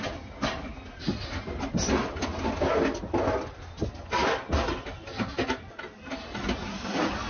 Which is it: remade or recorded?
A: recorded